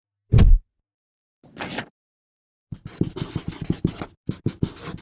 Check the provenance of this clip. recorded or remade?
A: recorded